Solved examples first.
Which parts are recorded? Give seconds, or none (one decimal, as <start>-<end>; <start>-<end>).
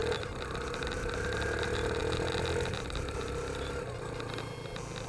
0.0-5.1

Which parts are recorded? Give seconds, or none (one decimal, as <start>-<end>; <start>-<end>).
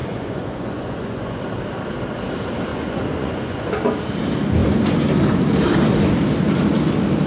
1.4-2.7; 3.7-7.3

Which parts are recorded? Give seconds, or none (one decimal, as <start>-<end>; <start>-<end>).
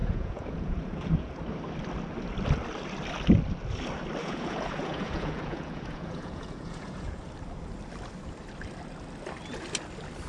1.4-4.2; 7.2-10.3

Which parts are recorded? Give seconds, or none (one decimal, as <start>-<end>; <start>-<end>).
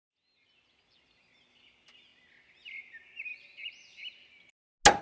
0.0-5.0